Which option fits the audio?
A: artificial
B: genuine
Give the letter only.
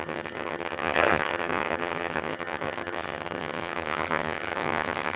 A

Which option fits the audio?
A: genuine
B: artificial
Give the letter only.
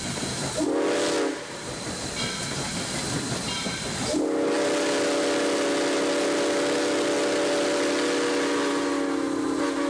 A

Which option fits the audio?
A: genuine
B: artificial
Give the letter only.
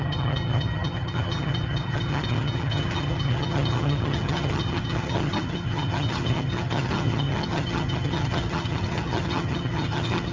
B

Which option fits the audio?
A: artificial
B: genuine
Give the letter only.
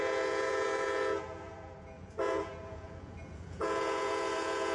A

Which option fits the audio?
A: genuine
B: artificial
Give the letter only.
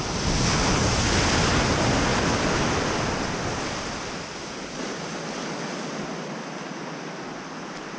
A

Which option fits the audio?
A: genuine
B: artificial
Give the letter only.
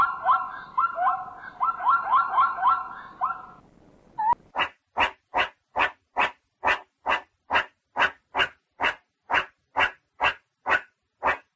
A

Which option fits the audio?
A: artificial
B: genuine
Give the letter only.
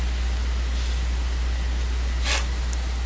B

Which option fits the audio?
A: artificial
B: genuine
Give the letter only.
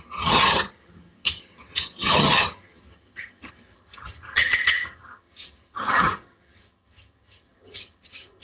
A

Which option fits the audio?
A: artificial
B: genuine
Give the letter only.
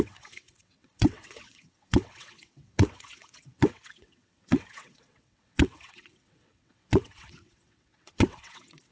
A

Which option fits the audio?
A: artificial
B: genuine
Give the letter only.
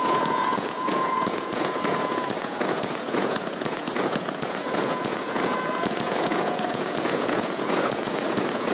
A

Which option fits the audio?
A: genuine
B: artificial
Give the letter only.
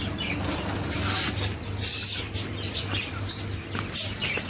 A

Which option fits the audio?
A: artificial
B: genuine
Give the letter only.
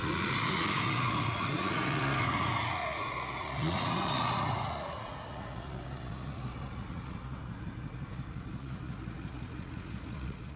A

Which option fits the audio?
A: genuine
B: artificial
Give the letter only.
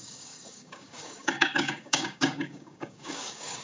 B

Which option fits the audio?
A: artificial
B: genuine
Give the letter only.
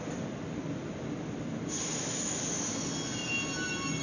B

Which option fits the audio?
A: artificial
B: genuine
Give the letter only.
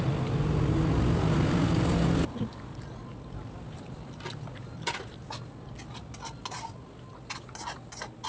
B